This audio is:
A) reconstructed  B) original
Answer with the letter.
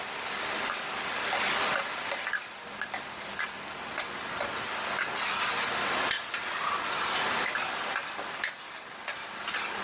B